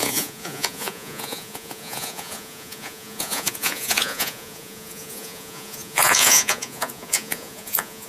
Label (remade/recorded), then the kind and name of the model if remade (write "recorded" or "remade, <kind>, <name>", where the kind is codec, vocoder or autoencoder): remade, vocoder, Vocos